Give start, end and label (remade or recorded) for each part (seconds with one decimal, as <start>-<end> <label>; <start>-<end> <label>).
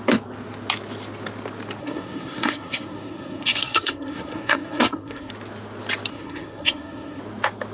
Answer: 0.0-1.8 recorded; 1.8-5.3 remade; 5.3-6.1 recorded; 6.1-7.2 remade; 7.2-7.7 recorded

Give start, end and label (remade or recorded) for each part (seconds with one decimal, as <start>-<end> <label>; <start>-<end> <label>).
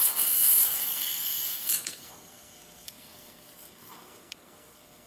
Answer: 0.0-5.1 remade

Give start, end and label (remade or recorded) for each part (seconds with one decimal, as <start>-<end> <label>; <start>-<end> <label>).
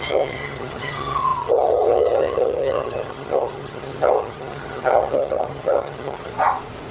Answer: 0.0-6.3 remade; 6.3-6.9 recorded